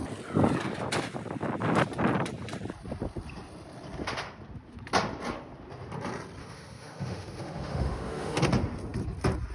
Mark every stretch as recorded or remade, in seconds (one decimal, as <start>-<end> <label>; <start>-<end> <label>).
0.0-6.4 recorded; 6.4-8.4 remade; 8.4-9.5 recorded